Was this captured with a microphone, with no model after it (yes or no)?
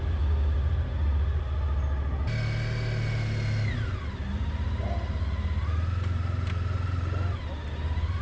yes